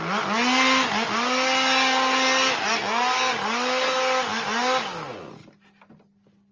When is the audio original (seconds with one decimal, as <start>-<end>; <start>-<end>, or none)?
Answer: 0.0-6.5